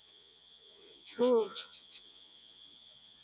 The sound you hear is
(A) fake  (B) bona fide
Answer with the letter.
A